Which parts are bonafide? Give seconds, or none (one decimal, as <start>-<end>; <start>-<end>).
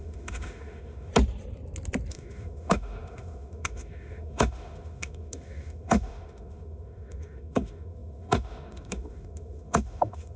1.1-2.1